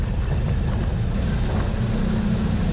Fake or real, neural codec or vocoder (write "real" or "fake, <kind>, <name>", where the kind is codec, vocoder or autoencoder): real